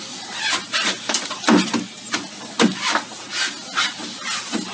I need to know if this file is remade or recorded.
recorded